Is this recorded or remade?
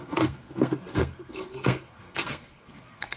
remade